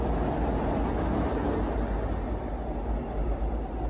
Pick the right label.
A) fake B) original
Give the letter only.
B